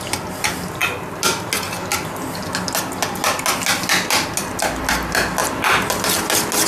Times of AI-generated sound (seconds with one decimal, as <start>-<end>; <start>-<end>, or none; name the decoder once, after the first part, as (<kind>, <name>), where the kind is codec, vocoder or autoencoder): 5.4-5.9 (vocoder, BigVGAN v2)